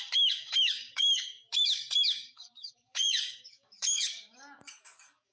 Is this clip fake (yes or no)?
yes